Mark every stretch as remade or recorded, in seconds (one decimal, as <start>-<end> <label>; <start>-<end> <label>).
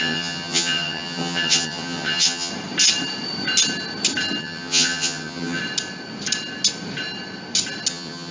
0.0-2.5 remade; 2.5-4.4 recorded; 4.4-5.6 remade; 5.6-7.9 recorded; 7.9-8.3 remade